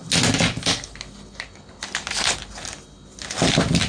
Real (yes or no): yes